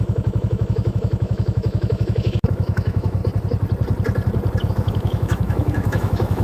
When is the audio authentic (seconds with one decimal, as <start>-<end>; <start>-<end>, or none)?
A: 3.2-4.7